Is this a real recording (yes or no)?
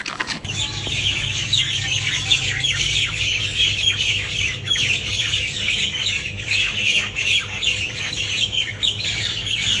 no